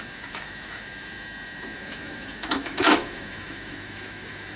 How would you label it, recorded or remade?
remade